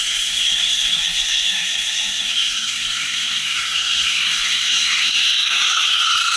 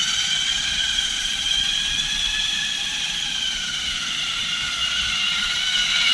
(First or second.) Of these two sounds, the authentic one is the second